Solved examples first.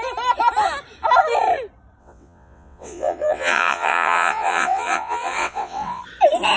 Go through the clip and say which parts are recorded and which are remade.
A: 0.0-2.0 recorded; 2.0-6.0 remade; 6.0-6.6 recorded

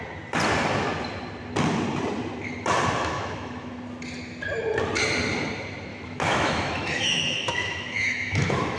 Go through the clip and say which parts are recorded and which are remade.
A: 0.0-3.0 recorded; 3.0-3.7 remade; 3.7-5.9 recorded; 5.9-8.8 remade